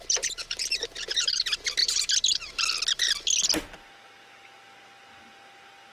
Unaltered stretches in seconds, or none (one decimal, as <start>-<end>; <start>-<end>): 0.0-5.9